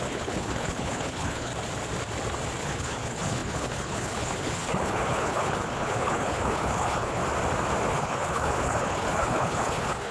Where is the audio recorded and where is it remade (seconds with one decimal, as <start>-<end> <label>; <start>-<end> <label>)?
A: 0.0-1.5 remade; 1.5-2.6 recorded; 2.6-7.2 remade; 7.2-7.9 recorded; 7.9-10.1 remade